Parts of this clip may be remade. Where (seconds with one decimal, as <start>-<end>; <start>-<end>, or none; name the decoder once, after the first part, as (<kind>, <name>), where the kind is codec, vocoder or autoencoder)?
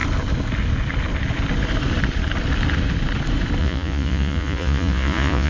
3.6-5.5 (vocoder, Vocos)